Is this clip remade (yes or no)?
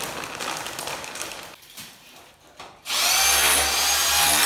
no